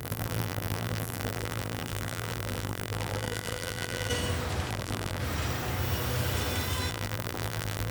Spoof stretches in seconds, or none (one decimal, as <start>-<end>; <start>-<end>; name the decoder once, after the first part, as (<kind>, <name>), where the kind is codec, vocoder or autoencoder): 0.0-4.1 (vocoder, BigVGAN v2); 4.7-5.2; 6.9-7.9